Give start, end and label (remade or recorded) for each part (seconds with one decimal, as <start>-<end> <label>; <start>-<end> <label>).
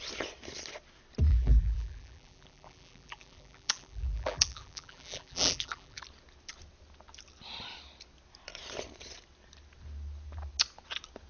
0.0-1.3 recorded; 1.3-6.0 remade; 6.0-11.3 recorded